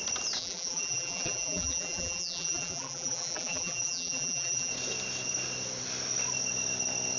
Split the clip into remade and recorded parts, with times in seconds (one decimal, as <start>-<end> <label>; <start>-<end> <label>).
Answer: 0.0-0.4 recorded; 0.4-4.7 remade; 4.7-7.2 recorded